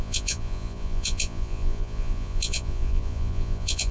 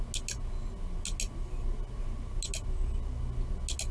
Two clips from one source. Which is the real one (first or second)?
second